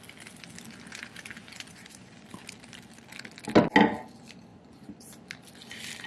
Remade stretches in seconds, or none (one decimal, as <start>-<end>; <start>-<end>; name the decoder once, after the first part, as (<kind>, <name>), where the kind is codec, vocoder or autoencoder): 1.4-2.3 (vocoder, Vocos); 4.5-5.2